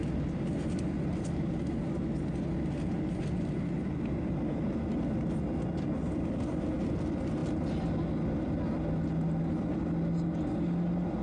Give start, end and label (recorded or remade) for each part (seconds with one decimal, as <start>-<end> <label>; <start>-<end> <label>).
0.0-11.2 recorded